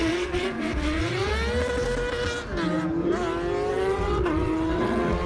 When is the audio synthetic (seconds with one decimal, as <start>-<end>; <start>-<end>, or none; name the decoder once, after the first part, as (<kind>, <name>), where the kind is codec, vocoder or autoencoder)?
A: 0.0-1.3 (vocoder, WaveNeXt); 3.7-5.3